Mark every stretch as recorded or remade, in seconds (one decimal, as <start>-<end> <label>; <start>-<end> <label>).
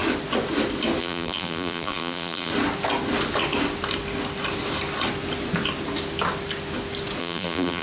0.0-1.0 recorded; 1.0-2.5 remade; 2.5-7.2 recorded; 7.2-7.8 remade